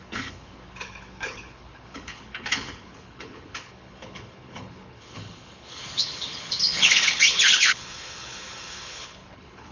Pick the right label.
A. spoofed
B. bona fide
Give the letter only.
A